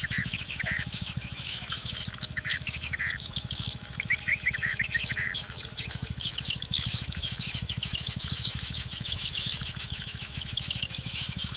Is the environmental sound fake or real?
fake